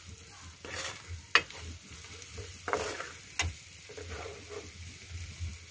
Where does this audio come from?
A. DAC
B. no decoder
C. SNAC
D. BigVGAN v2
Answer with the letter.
B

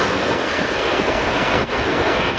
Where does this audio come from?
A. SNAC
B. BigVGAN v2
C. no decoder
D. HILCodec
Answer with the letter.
A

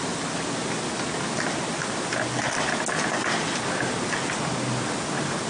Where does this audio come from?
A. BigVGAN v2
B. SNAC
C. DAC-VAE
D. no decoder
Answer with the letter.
D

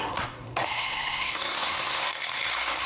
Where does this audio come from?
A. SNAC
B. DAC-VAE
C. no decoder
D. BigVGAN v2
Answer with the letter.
A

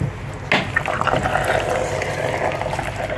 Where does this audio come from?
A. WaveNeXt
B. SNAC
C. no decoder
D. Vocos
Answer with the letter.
C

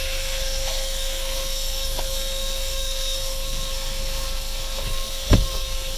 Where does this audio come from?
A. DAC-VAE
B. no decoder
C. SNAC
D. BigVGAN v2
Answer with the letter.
C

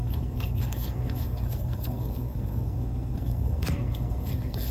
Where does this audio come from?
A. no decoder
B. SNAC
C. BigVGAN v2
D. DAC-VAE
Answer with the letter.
B